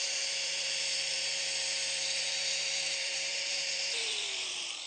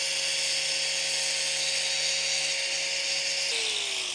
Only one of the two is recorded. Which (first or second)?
second